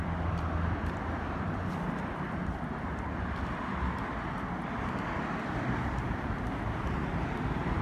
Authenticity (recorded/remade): remade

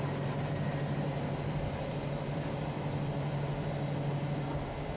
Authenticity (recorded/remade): recorded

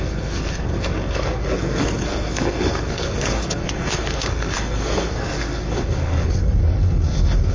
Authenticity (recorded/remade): remade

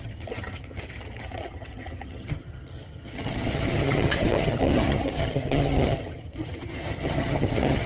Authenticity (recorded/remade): remade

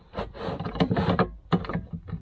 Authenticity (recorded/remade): remade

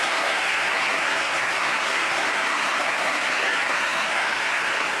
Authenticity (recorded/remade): remade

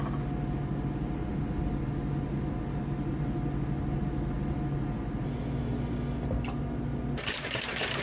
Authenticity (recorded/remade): recorded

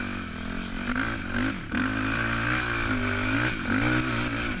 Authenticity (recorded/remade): recorded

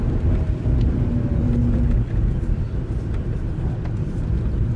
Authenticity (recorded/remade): recorded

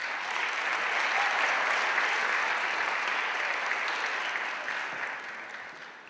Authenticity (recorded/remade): recorded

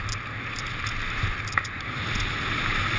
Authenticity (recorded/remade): recorded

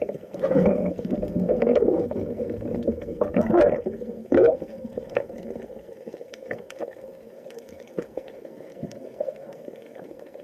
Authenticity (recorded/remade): remade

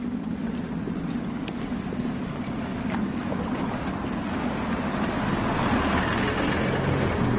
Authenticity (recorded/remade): recorded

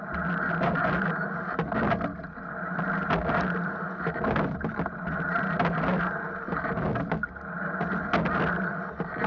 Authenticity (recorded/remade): recorded